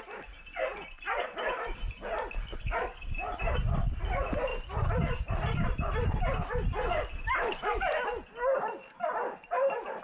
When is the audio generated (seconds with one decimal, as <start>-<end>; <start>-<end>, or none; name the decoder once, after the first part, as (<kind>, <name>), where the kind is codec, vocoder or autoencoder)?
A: 2.5-3.1 (codec, DAC)